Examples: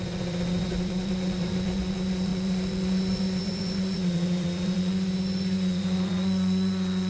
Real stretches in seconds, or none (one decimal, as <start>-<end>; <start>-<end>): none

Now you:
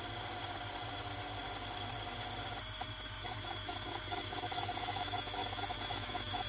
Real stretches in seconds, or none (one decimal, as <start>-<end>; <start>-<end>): 0.0-2.6

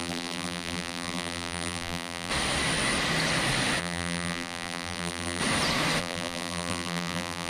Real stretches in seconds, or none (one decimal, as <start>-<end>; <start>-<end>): 2.3-3.8; 5.4-6.0

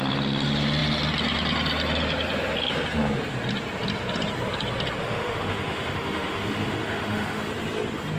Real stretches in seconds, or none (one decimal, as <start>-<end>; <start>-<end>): 0.0-5.0; 7.5-8.2

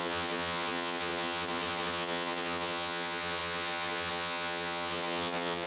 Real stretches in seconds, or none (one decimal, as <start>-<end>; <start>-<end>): none